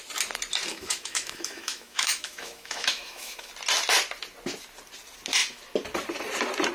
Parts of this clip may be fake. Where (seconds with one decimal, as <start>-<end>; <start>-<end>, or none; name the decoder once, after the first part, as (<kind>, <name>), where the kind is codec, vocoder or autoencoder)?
0.7-3.5 (autoencoder, DAC-VAE)